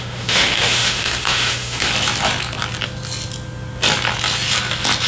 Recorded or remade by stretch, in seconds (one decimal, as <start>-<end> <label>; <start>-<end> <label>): 0.0-1.9 remade; 1.9-5.1 recorded